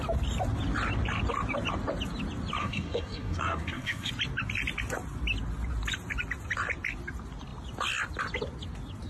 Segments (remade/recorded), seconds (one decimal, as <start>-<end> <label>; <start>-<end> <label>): 0.0-2.6 recorded; 2.6-4.1 remade; 4.1-9.1 recorded